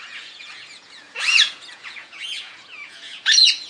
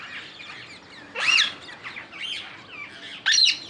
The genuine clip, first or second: second